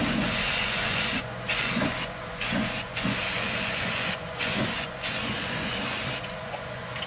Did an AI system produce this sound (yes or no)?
yes